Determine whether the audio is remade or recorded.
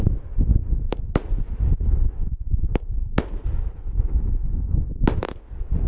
recorded